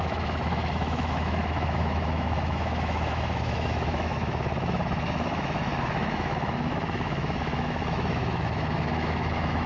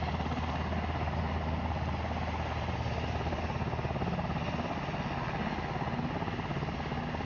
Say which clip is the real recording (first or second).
second